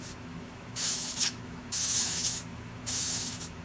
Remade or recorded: remade